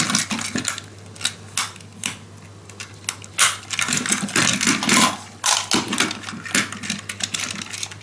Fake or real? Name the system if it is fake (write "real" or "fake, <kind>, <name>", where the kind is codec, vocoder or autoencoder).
real